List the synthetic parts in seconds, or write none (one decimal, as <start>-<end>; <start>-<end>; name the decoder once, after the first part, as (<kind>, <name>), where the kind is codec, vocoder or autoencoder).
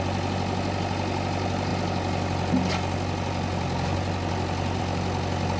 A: none